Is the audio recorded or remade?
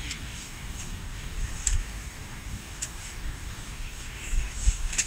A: remade